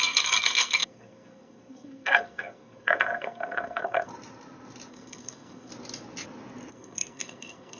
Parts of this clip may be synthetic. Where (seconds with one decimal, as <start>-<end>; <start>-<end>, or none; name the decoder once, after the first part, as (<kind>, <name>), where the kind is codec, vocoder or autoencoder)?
0.0-4.1 (codec, SNAC); 4.9-5.7; 6.7-7.8